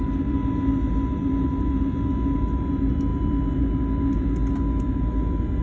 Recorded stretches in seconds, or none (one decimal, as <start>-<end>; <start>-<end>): 0.0-5.6